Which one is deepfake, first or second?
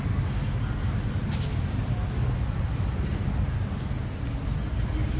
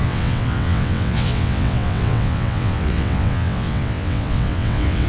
second